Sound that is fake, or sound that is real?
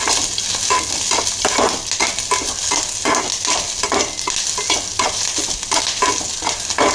real